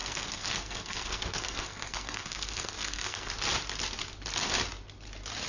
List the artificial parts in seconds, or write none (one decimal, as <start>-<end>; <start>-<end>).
0.0-3.3

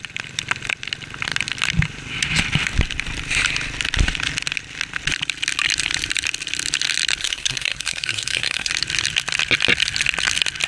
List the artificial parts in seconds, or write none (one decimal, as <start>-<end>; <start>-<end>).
7.2-8.7

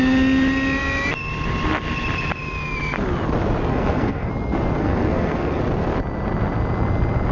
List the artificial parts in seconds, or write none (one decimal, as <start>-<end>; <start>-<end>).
3.7-4.3; 4.8-5.6

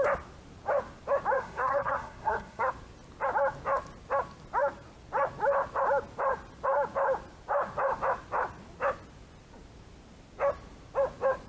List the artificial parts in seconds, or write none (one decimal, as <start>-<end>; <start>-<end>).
1.4-2.7

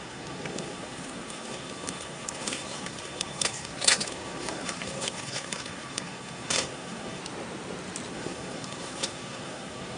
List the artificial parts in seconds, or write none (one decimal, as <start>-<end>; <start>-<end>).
0.0-7.2; 8.1-10.0

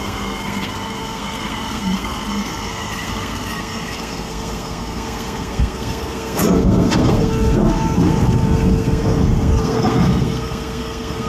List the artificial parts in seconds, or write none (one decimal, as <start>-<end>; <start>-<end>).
0.0-11.3

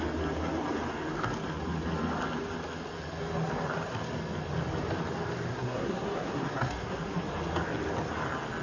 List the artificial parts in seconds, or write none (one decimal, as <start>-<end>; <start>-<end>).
5.5-7.0